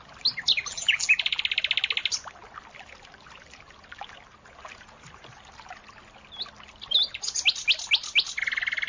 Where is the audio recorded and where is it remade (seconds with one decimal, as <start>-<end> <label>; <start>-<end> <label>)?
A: 0.0-0.7 recorded; 0.7-1.4 remade; 1.4-8.9 recorded